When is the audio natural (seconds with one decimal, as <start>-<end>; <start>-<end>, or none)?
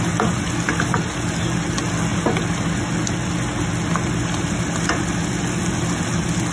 0.0-6.5